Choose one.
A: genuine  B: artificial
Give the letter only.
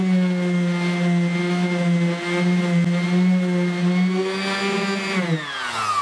A